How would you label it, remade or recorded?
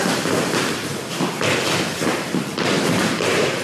recorded